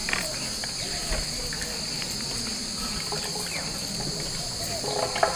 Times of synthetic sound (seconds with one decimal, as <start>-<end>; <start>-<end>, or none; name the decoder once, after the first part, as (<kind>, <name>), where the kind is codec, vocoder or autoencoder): none